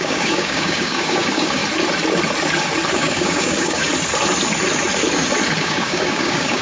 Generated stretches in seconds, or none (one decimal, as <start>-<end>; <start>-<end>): 0.0-1.6; 2.9-3.9; 5.6-6.6